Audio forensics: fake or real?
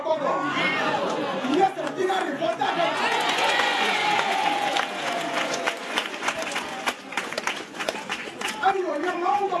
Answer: fake